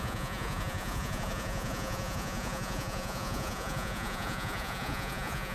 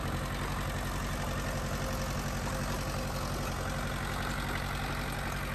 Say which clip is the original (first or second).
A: second